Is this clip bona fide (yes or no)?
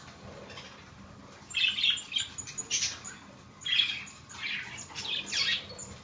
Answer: yes